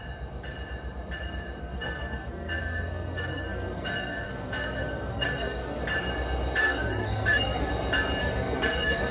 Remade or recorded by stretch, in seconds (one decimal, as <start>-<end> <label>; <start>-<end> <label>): 0.0-1.6 recorded; 1.6-5.8 remade; 5.8-6.6 recorded; 6.6-7.7 remade; 7.7-8.2 recorded; 8.2-9.1 remade